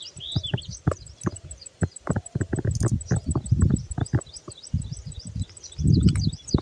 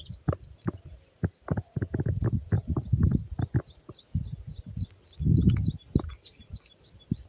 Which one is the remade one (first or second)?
first